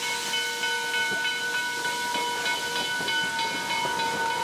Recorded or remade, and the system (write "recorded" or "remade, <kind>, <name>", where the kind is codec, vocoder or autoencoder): recorded